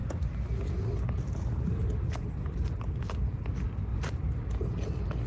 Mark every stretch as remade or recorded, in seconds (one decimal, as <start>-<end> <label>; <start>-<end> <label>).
0.0-5.3 recorded